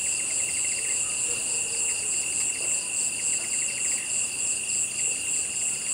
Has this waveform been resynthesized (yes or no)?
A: no